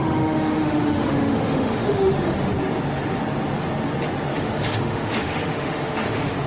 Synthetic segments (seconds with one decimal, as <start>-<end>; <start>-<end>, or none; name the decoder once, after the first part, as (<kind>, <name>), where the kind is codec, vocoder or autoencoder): 0.0-2.5 (autoencoder, DAC-VAE); 4.4-6.5